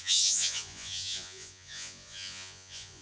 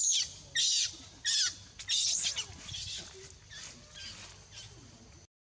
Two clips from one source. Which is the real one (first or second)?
second